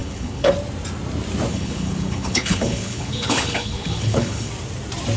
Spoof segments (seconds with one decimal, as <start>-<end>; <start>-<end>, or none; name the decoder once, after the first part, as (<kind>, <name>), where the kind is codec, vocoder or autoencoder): 0.0-0.5 (codec, HILCodec); 1.5-4.5